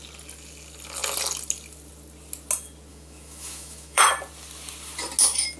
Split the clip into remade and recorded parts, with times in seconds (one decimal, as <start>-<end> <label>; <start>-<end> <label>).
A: 0.0-2.9 recorded; 2.9-4.0 remade; 4.0-5.6 recorded